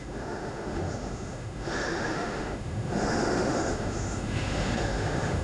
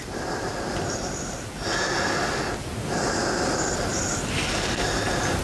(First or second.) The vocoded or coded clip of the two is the first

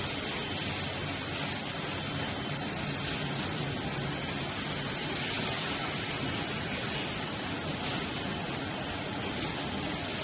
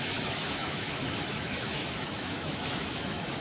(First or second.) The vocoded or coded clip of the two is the second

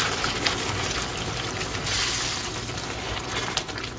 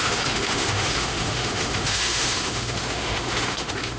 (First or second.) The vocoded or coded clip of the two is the second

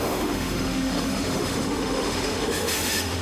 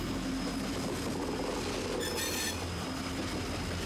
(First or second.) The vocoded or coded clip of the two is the first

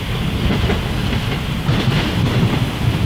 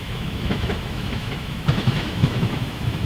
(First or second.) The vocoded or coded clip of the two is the second